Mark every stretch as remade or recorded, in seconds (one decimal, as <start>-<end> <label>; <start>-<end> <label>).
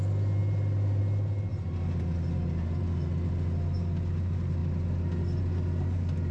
0.0-6.3 recorded